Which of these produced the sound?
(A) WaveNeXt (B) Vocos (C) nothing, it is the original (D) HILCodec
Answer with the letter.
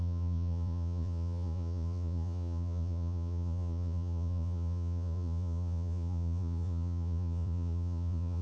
B